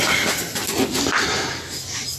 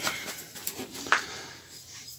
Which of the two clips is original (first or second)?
first